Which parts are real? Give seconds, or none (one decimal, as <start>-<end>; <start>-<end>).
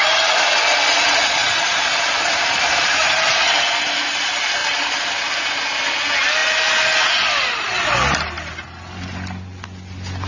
0.0-1.4; 3.4-4.6; 5.1-10.3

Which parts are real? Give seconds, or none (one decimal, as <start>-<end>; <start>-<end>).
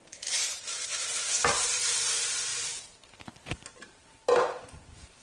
2.5-4.4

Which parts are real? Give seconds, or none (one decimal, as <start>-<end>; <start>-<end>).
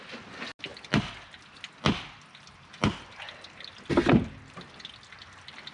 0.0-5.7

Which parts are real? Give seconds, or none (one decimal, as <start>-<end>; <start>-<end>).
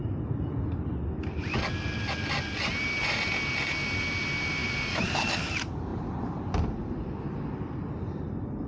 0.0-4.6; 5.1-8.7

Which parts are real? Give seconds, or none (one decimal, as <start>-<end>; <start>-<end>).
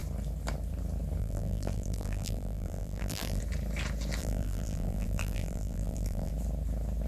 0.0-1.2; 3.4-4.2; 6.3-7.1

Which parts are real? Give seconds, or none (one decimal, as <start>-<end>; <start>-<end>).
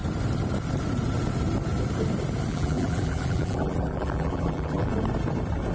0.0-2.5; 4.9-5.7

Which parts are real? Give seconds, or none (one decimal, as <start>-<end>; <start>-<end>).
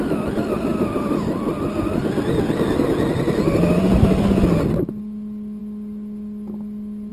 0.0-7.1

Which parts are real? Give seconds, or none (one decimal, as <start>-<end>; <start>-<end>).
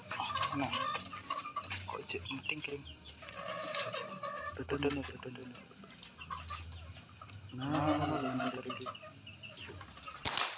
0.0-1.2; 4.6-10.6